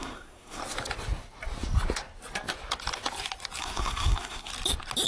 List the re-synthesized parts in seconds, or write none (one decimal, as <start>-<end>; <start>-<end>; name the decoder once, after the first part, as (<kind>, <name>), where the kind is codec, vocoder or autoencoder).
0.0-0.6 (codec, SNAC); 3.6-4.5